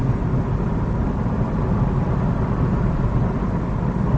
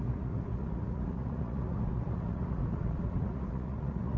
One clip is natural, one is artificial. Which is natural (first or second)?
first